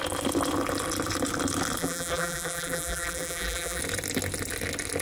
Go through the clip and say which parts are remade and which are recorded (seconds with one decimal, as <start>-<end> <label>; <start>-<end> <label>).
0.0-1.8 recorded; 1.8-3.8 remade; 3.8-5.0 recorded